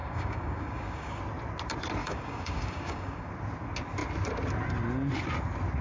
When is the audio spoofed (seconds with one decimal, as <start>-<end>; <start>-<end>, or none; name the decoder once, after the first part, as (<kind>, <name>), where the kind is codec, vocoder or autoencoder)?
0.0-1.2 (codec, DAC); 2.0-3.3